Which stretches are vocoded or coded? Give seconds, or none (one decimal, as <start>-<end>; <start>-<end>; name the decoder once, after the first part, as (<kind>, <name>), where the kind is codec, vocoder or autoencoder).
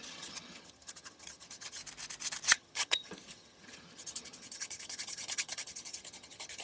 0.0-1.8 (vocoder, HiFi-GAN); 2.5-6.6